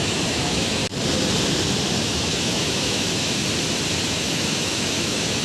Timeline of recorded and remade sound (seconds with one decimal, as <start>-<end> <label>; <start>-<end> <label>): 0.0-0.8 remade; 0.8-2.0 recorded; 2.0-3.4 remade; 3.4-4.0 recorded; 4.0-5.4 remade